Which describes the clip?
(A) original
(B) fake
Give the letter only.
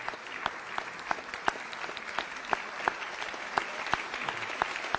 A